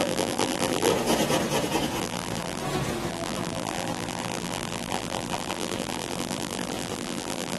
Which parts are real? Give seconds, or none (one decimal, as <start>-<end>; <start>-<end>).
0.9-2.0; 2.6-3.1

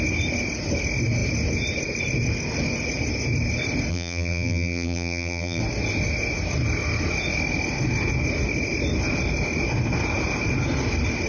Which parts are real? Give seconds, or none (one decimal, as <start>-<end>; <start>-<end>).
0.0-3.9; 5.6-11.3

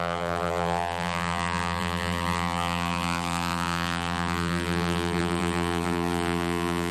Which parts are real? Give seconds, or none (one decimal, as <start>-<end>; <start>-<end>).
none